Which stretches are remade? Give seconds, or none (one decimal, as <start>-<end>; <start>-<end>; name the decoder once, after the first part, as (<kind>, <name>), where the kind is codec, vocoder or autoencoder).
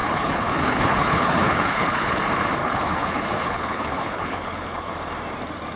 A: 0.0-2.2 (codec, HILCodec); 2.6-4.9